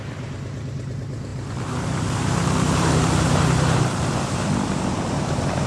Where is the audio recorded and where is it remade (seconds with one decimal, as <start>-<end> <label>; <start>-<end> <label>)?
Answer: 0.0-5.7 remade